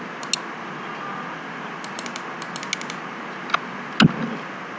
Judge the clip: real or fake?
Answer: real